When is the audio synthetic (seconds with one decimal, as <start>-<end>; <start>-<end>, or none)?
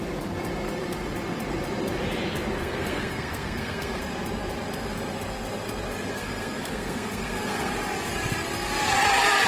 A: 2.6-4.0; 6.1-7.7